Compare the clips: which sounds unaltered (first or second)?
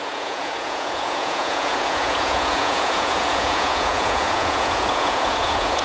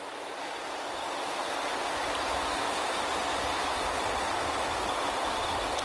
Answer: second